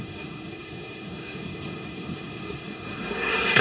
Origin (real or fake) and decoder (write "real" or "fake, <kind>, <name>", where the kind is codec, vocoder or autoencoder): fake, codec, SNAC